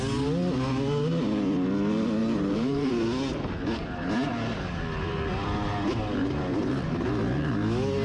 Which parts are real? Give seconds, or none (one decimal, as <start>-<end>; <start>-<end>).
0.0-2.2; 2.9-6.5; 7.5-8.0